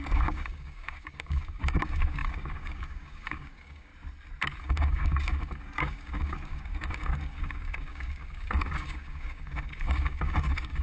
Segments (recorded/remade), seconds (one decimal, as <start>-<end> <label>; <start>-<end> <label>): 0.0-3.9 remade; 3.9-4.6 recorded; 4.6-10.8 remade